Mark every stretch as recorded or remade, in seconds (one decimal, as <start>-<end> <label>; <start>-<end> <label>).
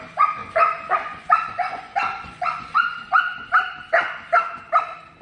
0.0-0.4 recorded; 0.4-3.5 remade; 3.5-5.2 recorded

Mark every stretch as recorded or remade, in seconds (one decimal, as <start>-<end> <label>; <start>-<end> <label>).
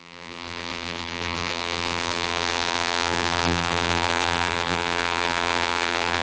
0.0-6.2 remade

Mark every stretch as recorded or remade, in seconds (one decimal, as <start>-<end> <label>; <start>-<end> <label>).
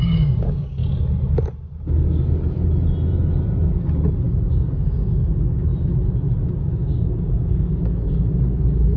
0.0-0.8 remade; 0.8-4.5 recorded; 4.5-5.7 remade; 5.7-6.6 recorded; 6.6-9.0 remade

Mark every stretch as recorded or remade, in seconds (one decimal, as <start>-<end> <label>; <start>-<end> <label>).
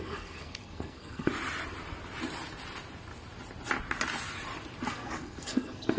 0.0-1.3 remade; 1.3-4.9 recorded; 4.9-6.0 remade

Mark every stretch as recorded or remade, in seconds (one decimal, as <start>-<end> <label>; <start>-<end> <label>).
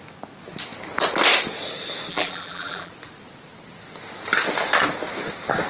0.0-2.1 recorded; 2.1-2.9 remade; 2.9-5.7 recorded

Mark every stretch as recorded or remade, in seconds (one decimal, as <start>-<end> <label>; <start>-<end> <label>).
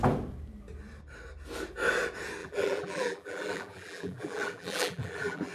0.0-2.4 recorded; 2.4-5.5 remade